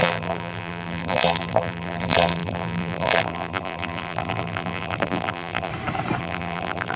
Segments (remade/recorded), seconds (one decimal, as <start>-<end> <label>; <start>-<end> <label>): 0.0-5.7 remade; 5.7-6.2 recorded; 6.2-7.0 remade